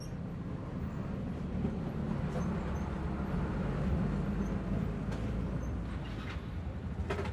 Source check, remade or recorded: recorded